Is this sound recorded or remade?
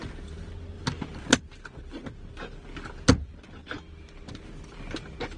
recorded